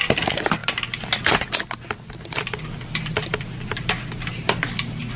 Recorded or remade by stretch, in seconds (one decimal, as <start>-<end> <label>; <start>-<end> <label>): 0.0-5.2 recorded